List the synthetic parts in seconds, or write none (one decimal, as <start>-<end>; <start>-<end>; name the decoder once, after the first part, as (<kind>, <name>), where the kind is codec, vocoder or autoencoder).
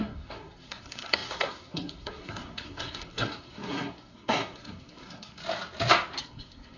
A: 0.0-5.4 (codec, SNAC); 6.2-6.8